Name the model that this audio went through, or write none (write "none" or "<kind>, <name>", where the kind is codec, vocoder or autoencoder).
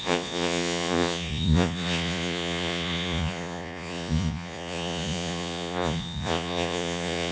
vocoder, Vocos